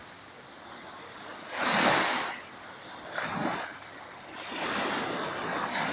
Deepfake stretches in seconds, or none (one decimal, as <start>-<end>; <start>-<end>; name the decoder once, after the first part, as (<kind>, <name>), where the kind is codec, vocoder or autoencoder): none